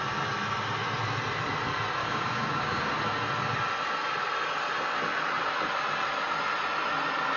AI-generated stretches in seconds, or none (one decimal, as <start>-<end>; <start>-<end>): 2.0-2.9